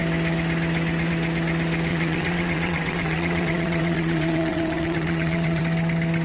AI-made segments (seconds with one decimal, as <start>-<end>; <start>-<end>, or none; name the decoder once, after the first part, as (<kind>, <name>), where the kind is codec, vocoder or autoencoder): 1.9-5.6 (vocoder, WaveNeXt)